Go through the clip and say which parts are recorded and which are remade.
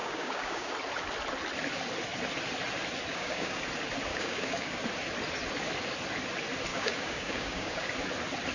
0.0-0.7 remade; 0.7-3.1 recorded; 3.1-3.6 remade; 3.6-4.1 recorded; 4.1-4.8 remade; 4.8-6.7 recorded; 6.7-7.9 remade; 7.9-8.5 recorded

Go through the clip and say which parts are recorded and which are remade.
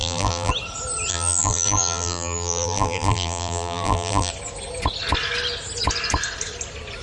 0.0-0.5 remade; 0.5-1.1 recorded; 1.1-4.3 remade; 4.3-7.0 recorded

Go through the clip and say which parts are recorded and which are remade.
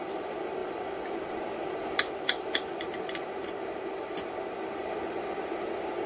0.0-6.1 remade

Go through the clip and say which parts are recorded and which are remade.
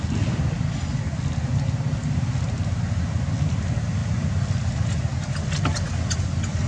0.0-6.7 recorded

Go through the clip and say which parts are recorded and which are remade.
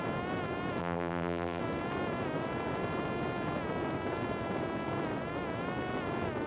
0.0-0.8 recorded; 0.8-1.6 remade; 1.6-6.5 recorded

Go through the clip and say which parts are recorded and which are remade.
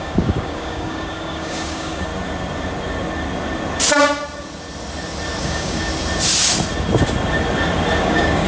0.0-2.1 remade; 2.1-5.4 recorded; 5.4-5.9 remade; 5.9-8.0 recorded; 8.0-8.5 remade